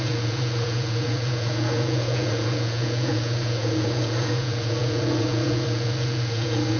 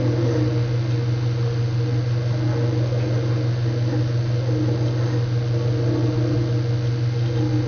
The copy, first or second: first